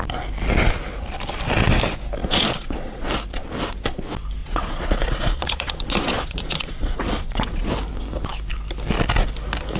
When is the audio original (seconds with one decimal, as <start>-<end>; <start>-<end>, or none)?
0.0-2.2; 3.1-4.4; 7.7-9.8

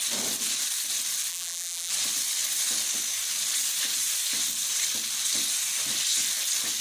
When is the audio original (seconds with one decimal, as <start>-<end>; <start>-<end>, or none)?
0.0-1.3; 1.9-6.8

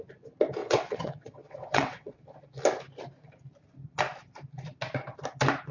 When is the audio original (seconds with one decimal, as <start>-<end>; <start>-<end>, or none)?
0.0-0.6; 2.2-5.7

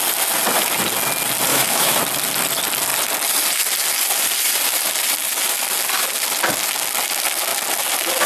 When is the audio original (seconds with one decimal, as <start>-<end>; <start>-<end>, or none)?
0.0-1.5; 2.0-8.3